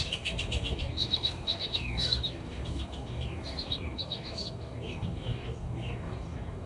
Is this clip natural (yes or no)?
no